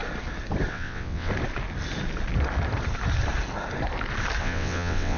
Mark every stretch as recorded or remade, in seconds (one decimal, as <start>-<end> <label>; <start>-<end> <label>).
0.0-0.7 recorded; 0.7-1.3 remade; 1.3-4.4 recorded; 4.4-5.2 remade